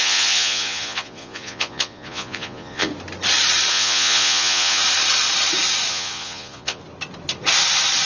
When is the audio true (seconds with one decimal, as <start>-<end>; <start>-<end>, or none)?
2.9-3.7; 4.8-5.9; 6.8-8.1